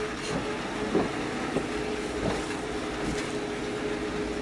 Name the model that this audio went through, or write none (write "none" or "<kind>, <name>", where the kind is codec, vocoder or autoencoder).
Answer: none